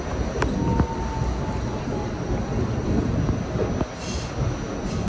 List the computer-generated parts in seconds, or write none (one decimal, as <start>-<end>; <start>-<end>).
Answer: none

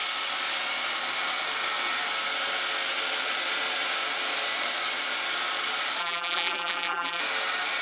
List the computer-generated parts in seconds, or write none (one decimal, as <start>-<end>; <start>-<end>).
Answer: 6.0-7.2